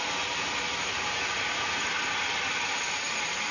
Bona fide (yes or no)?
yes